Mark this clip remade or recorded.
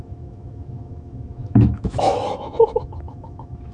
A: remade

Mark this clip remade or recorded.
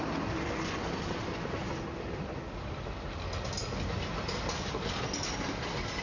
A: recorded